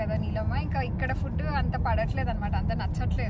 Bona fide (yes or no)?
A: yes